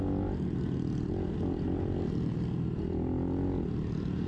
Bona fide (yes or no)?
yes